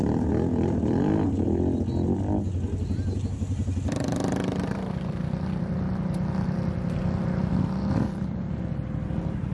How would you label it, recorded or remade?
recorded